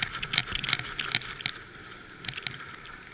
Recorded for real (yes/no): yes